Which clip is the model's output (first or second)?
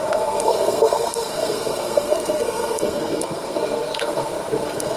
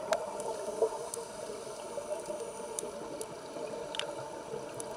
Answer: first